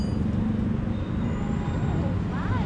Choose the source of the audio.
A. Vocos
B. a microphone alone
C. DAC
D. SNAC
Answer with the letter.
B